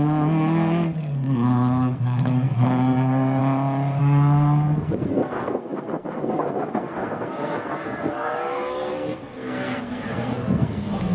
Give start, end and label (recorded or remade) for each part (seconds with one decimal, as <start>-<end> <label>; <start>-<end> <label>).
0.0-3.4 remade; 3.4-4.0 recorded; 4.0-11.1 remade